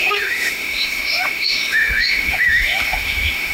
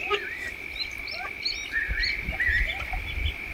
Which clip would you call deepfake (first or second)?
first